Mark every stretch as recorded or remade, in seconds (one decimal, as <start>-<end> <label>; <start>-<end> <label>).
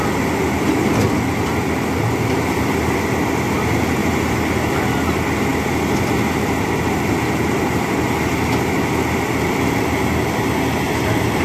0.0-4.0 recorded; 4.0-4.5 remade; 4.5-11.4 recorded